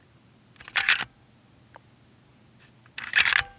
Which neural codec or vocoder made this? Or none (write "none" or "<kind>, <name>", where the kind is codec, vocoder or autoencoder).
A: none